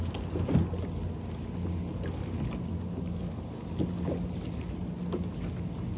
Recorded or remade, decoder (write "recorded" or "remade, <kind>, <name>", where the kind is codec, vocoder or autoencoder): recorded